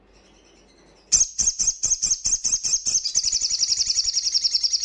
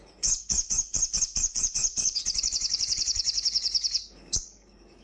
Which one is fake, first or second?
second